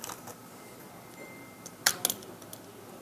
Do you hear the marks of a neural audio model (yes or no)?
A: no